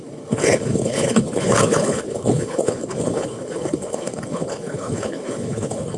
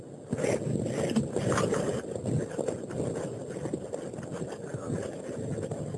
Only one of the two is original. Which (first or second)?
second